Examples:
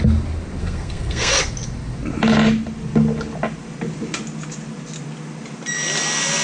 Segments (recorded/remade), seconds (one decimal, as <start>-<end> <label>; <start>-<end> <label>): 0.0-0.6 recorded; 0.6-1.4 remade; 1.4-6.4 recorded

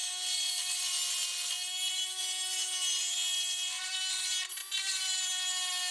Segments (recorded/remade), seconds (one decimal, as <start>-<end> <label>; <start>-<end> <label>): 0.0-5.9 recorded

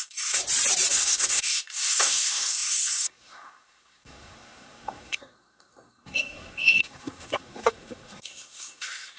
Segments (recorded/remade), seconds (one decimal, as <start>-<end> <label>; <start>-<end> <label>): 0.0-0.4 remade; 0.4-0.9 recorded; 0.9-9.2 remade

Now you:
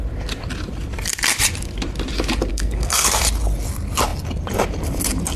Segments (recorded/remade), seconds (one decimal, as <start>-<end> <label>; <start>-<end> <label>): 0.0-2.5 recorded; 2.5-3.2 remade; 3.2-5.4 recorded